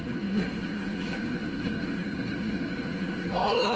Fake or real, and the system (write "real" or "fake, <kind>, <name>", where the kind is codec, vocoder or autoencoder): fake, codec, SNAC